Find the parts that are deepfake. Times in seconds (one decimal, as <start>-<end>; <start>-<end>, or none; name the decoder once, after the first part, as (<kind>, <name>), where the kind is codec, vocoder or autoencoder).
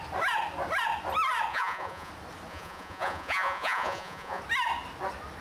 1.5-2.1 (vocoder, Vocos); 2.5-4.4